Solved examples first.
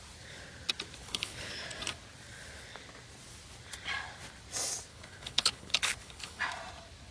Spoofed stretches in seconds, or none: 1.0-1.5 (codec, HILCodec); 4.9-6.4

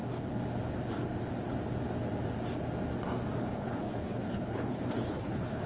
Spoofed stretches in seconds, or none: 3.4-5.7 (codec, HILCodec)